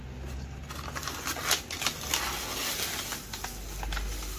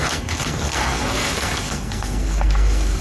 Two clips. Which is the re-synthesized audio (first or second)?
second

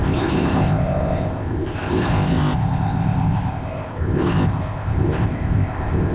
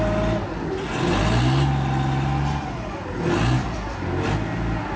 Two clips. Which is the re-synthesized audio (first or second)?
first